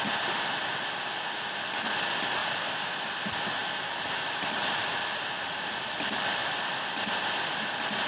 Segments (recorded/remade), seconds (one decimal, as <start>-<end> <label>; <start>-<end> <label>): 0.0-2.4 recorded; 2.4-3.1 remade; 3.1-3.6 recorded; 3.6-4.9 remade; 4.9-8.1 recorded